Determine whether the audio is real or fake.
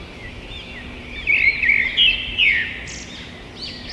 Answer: real